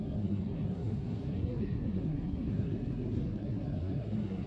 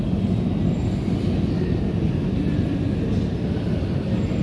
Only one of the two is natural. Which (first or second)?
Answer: second